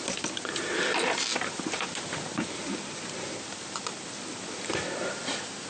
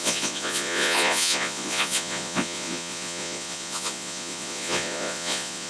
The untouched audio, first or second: first